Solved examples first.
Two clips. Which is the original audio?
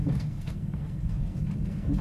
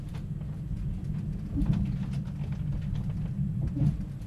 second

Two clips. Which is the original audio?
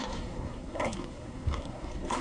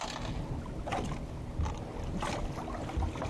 second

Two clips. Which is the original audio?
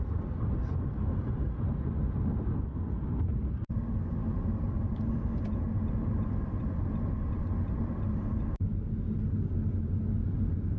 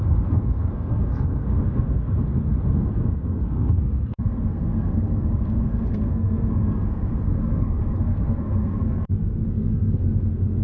first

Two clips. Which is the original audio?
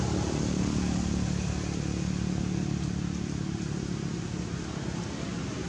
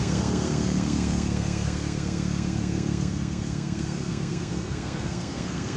first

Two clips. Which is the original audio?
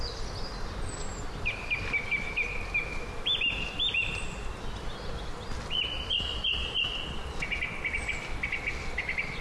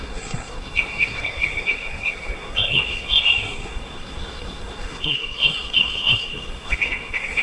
first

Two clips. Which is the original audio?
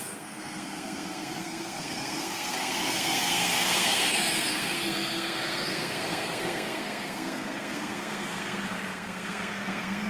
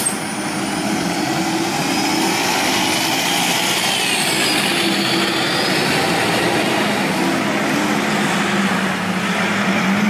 second